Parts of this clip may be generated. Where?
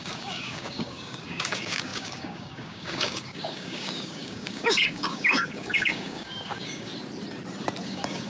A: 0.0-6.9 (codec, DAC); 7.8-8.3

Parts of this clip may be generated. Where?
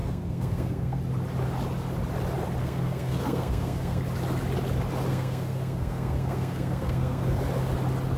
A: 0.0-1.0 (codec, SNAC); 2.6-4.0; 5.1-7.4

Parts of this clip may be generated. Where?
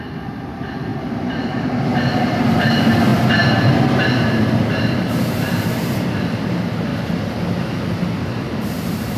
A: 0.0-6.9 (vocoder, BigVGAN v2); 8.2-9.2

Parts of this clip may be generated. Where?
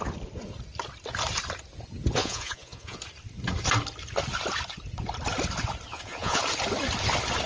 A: 2.2-3.0 (vocoder, Vocos); 5.9-6.4